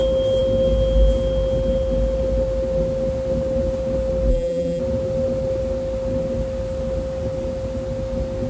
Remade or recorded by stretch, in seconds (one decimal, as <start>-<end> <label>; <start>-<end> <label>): 0.0-4.3 recorded; 4.3-4.8 remade; 4.8-8.5 recorded